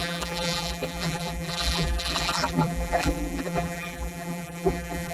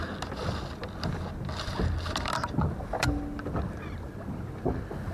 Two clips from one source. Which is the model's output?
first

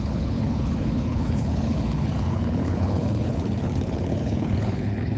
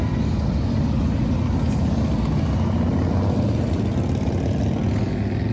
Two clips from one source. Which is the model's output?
first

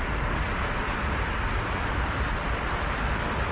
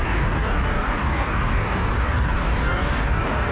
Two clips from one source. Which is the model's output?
second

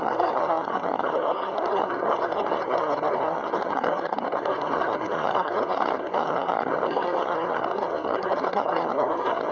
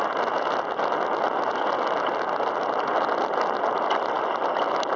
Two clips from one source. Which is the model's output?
first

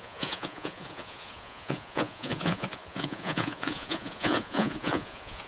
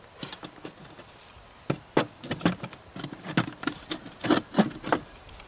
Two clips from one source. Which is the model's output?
first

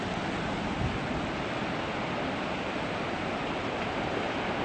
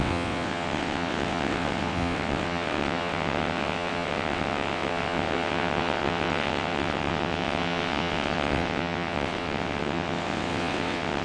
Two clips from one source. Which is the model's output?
second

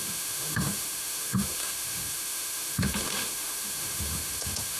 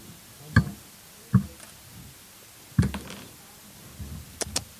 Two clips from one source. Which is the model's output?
first